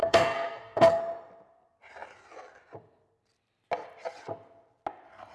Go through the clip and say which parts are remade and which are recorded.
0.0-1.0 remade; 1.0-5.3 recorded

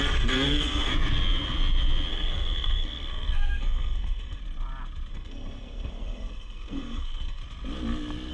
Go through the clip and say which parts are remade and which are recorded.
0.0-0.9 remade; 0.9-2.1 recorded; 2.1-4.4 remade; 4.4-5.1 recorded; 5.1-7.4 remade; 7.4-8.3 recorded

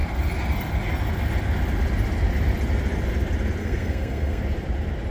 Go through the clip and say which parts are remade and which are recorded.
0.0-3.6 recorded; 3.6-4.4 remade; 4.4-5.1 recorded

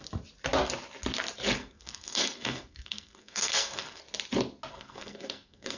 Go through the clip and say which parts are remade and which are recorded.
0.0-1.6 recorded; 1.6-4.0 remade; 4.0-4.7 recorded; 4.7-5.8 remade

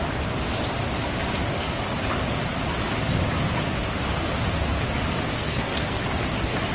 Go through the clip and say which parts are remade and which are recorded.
0.0-5.3 recorded; 5.3-6.0 remade; 6.0-6.7 recorded

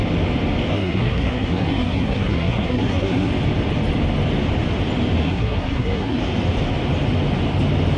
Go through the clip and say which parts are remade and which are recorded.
0.0-0.7 recorded; 0.7-3.3 remade; 3.3-5.2 recorded; 5.2-6.2 remade; 6.2-8.0 recorded

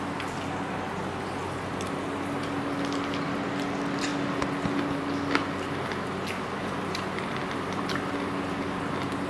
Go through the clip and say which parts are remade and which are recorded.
0.0-9.3 recorded

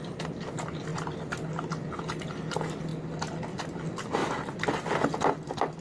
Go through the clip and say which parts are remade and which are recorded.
0.0-5.8 recorded